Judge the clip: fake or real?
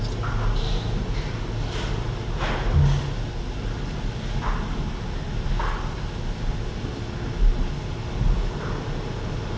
real